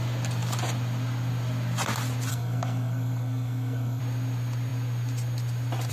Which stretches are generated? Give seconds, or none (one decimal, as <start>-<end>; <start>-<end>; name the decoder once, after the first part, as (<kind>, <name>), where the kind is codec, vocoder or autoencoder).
2.3-4.0 (codec, SNAC)

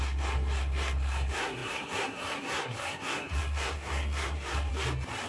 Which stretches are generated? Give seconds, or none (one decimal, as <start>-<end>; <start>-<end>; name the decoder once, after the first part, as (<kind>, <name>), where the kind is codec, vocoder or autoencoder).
0.0-4.7 (codec, SNAC)

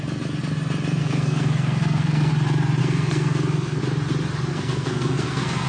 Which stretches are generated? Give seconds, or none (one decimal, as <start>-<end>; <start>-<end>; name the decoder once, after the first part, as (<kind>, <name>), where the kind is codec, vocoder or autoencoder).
1.0-2.3 (codec, SNAC); 2.8-3.8; 4.5-5.7

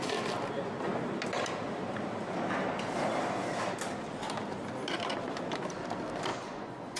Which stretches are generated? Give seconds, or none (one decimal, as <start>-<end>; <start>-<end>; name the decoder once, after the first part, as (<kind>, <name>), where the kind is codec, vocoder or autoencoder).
6.3-7.0 (vocoder, Vocos)

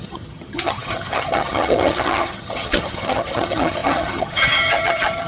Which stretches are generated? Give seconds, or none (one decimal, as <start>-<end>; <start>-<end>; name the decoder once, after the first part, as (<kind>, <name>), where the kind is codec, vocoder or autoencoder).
0.0-5.3 (vocoder, HiFi-GAN)

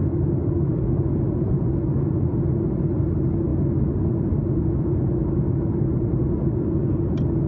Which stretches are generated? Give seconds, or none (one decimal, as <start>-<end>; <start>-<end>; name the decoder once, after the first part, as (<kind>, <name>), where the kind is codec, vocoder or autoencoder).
none

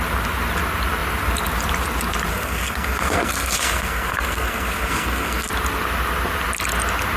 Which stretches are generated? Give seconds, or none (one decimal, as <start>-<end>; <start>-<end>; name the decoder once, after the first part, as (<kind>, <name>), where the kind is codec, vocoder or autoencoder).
2.3-5.5 (codec, SNAC)